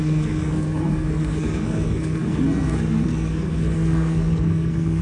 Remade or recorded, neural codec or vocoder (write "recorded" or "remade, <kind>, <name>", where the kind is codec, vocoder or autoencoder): remade, codec, SNAC